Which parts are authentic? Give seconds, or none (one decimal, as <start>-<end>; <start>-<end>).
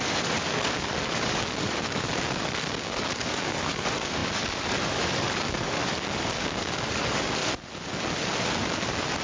7.4-9.2